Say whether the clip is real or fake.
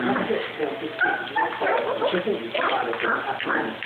real